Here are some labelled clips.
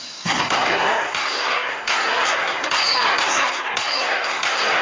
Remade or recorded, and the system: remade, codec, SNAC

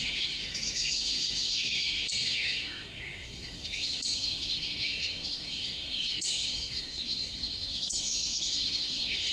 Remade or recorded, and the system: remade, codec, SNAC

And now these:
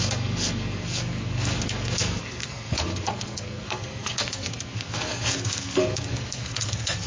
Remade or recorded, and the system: remade, codec, SNAC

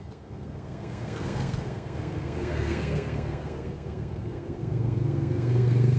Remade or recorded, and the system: remade, codec, SNAC